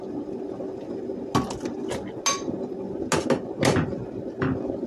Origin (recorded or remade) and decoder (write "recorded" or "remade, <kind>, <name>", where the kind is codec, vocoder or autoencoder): recorded